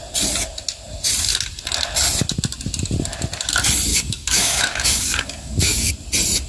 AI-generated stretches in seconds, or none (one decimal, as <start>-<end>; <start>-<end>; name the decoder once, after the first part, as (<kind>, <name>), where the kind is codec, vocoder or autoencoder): 3.9-5.9 (codec, DAC)